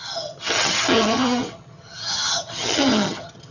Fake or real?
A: fake